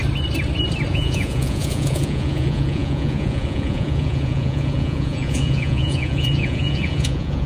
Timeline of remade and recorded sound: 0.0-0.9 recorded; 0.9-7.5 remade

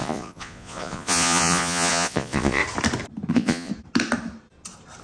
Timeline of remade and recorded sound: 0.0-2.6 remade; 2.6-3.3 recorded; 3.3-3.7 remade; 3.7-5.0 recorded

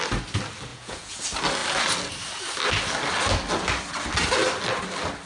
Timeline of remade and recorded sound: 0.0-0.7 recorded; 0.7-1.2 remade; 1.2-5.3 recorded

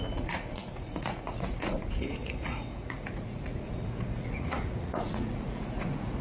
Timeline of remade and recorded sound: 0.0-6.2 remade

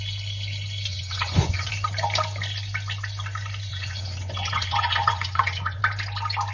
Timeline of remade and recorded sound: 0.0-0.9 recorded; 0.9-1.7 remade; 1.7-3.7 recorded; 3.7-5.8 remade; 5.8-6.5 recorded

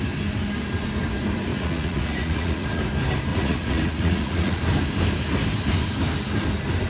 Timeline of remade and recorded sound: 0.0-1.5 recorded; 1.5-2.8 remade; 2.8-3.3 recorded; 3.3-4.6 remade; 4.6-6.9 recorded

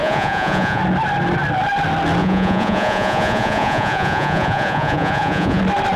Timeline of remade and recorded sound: 0.0-0.8 remade; 0.8-2.2 recorded; 2.2-5.6 remade; 5.6-6.0 recorded

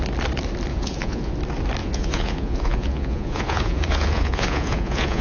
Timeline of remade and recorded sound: 0.0-0.7 recorded; 0.7-1.3 remade; 1.3-1.8 recorded; 1.8-5.2 remade